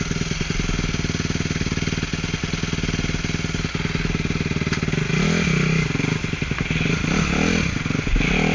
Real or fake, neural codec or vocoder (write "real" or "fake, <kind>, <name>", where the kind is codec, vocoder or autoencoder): real